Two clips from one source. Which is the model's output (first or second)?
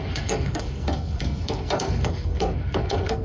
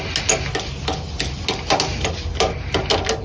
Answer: first